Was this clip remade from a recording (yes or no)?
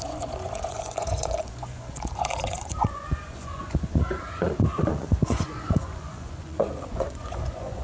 yes